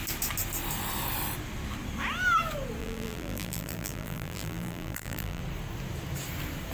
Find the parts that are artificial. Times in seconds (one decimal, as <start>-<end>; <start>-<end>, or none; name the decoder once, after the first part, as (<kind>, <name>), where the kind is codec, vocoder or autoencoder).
2.8-5.4 (vocoder, BigVGAN v2)